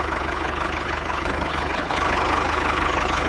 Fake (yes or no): yes